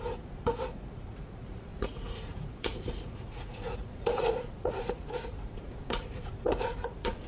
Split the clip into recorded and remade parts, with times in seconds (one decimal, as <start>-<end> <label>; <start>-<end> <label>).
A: 0.0-7.3 remade